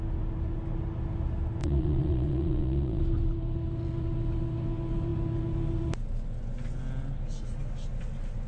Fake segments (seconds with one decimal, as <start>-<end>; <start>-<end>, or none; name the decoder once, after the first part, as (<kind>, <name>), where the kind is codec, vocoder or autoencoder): 1.6-3.0 (vocoder, Vocos)